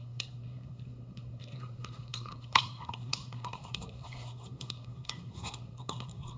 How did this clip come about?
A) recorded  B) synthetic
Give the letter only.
B